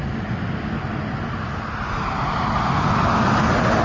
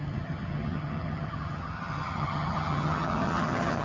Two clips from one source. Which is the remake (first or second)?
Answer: second